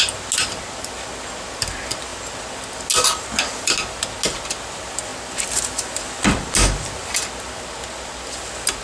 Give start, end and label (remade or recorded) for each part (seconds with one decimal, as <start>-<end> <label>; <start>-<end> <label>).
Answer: 0.0-8.8 recorded